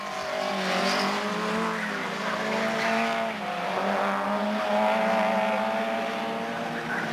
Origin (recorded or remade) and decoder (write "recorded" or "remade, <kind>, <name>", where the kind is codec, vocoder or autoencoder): recorded